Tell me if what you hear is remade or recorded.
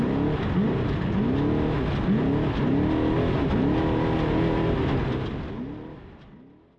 recorded